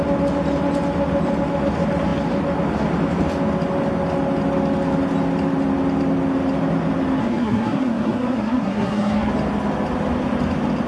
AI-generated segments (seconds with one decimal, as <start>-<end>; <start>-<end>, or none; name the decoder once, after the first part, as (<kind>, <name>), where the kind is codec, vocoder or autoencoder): 7.2-9.3 (codec, SNAC)